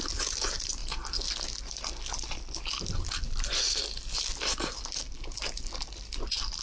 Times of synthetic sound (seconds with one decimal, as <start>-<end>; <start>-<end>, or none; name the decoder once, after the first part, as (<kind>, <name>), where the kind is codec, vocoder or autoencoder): none